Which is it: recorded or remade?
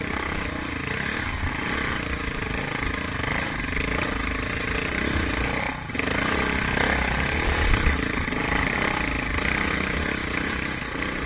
recorded